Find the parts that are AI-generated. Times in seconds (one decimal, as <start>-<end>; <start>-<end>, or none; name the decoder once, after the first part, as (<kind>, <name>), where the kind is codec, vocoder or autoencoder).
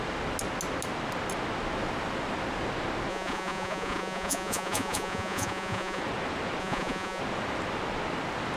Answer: 3.1-6.0 (vocoder, Vocos); 6.6-7.2